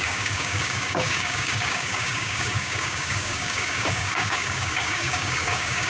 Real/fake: fake